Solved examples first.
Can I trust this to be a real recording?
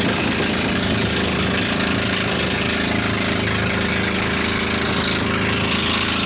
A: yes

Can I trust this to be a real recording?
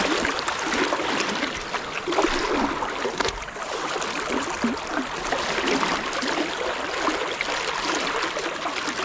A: yes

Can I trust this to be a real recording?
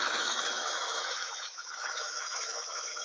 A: no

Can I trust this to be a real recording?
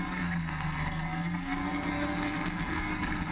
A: no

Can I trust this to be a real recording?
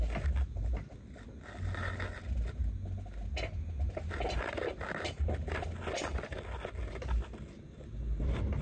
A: yes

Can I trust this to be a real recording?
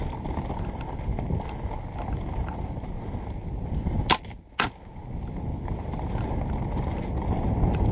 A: yes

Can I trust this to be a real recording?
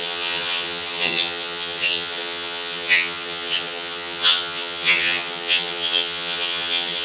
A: no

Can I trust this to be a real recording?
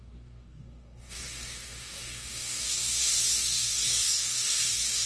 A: no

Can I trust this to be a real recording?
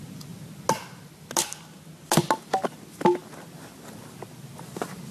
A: yes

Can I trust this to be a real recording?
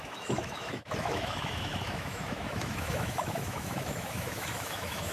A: no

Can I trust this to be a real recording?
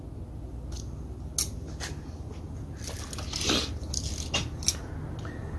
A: yes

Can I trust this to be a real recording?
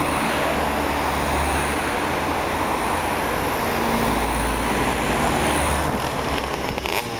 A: yes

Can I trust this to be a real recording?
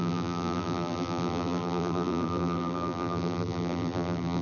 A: no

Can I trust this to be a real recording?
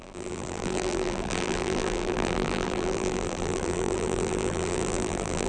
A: no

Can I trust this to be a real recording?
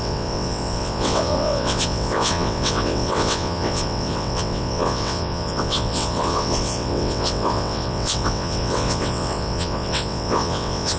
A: no